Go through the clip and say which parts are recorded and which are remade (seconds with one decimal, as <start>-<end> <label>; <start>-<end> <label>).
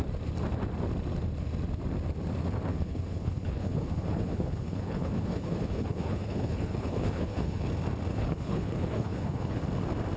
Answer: 0.0-2.7 recorded; 2.7-7.7 remade; 7.7-8.1 recorded; 8.1-9.6 remade; 9.6-10.2 recorded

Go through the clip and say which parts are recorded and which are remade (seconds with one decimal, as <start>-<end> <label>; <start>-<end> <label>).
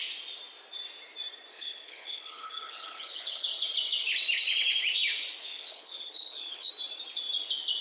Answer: 0.0-1.5 recorded; 1.5-3.5 remade; 3.5-5.4 recorded; 5.4-6.7 remade; 6.7-7.8 recorded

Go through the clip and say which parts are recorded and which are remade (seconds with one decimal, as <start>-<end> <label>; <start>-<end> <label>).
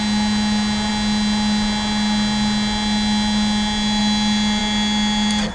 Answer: 0.0-5.5 recorded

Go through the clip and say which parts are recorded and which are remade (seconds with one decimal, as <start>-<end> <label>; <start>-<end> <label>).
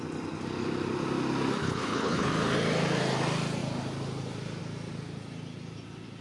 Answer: 0.0-1.6 recorded; 1.6-2.3 remade; 2.3-6.2 recorded